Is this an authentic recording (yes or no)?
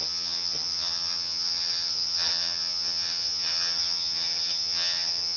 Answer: no